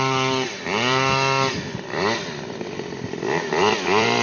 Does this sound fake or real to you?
fake